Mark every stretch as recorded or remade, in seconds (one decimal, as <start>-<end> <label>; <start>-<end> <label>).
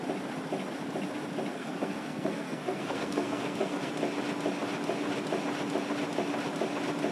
0.0-1.5 recorded; 1.5-3.9 remade; 3.9-7.1 recorded